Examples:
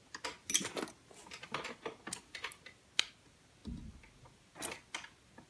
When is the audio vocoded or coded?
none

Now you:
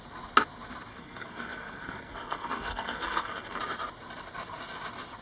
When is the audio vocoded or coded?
0.9-3.6 (codec, SNAC)

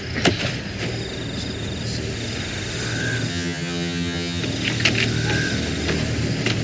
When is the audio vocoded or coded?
3.3-4.4 (vocoder, HiFi-GAN)